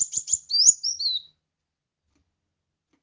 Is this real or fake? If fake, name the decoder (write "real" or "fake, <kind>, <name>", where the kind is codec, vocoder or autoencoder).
real